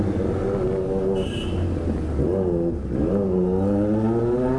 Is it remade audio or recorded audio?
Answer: recorded